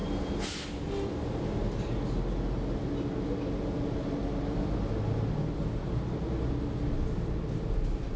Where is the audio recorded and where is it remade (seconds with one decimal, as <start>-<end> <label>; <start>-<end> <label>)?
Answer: 0.0-8.2 recorded